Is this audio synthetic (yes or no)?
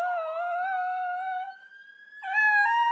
no